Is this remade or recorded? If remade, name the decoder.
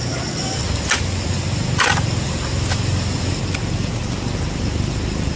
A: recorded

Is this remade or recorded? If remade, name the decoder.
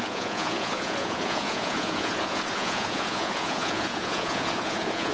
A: remade, vocoder, Vocos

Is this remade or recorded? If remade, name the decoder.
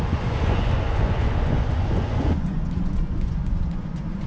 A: remade, vocoder, Vocos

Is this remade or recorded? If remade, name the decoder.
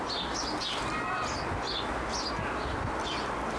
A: recorded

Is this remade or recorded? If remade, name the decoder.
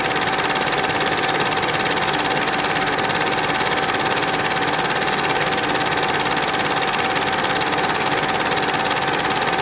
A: recorded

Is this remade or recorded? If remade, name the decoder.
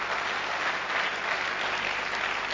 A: recorded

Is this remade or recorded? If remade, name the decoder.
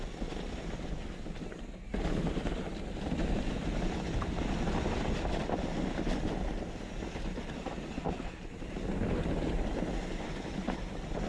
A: recorded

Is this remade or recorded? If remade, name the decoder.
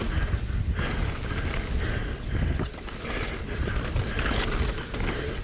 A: recorded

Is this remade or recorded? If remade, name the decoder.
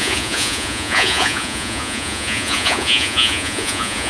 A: remade, vocoder, Vocos